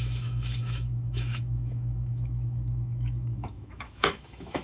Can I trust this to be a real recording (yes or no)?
no